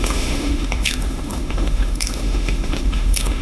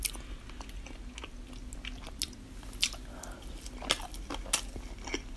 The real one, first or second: second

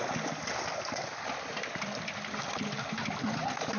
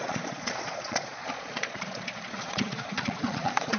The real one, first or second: first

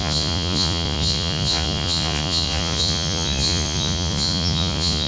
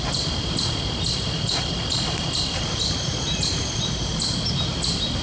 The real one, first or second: second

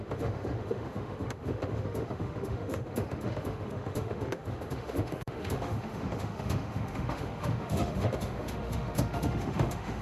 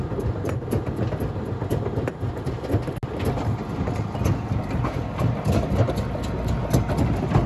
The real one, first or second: second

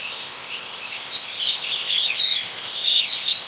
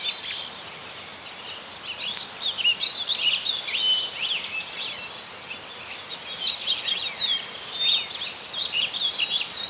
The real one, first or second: second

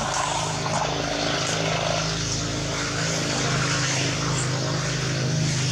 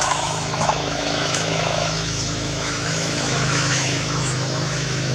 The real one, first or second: first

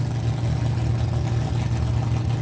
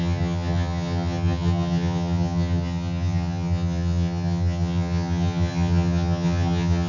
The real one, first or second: first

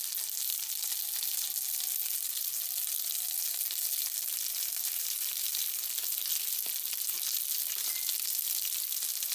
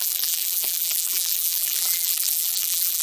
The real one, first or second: first